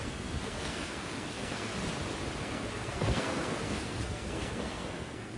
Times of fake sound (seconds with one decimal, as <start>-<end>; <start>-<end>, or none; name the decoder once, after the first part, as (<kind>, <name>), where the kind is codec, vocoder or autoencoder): 0.0-1.7 (codec, SNAC); 2.4-5.4